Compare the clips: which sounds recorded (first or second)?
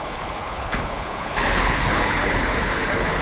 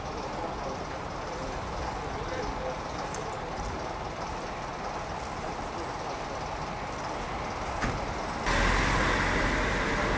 second